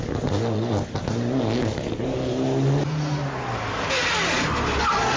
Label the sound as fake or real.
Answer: real